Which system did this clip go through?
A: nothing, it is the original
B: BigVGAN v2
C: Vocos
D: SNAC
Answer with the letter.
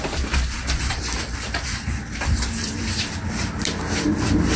B